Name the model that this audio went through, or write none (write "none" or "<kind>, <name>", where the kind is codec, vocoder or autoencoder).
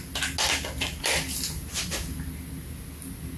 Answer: none